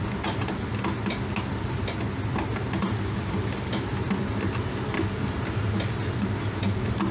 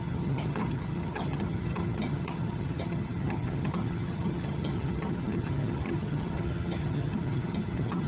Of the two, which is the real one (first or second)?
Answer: first